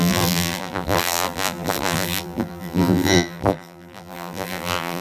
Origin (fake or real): fake